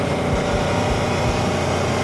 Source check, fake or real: real